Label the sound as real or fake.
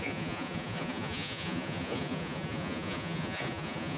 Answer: fake